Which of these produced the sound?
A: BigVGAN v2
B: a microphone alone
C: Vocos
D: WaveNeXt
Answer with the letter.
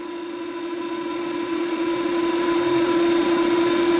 C